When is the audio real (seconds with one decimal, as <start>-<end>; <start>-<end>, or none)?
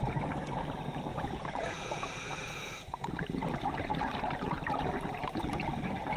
0.0-1.1; 3.1-6.2